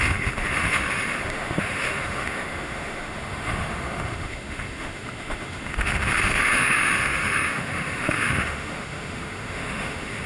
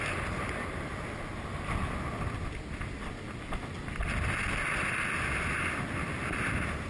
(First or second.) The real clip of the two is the second